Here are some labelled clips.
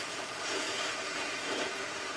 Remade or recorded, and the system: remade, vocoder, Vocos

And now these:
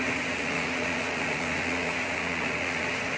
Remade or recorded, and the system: remade, vocoder, Vocos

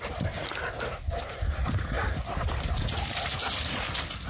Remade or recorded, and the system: recorded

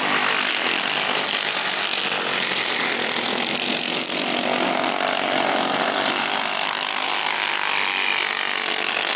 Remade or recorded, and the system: recorded